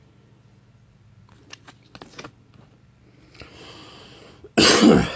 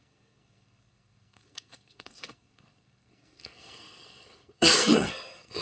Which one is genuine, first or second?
first